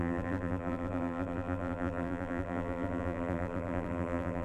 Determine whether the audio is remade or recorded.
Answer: remade